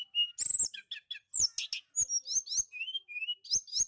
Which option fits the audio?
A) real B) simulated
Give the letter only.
A